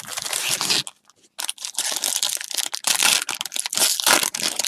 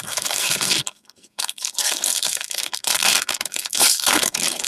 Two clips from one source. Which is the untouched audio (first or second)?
first